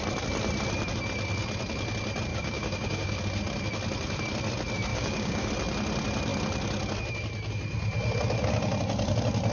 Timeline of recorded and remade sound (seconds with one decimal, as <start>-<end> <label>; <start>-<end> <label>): 0.0-2.3 recorded; 2.3-3.2 remade; 3.2-4.9 recorded; 4.9-5.5 remade; 5.5-9.5 recorded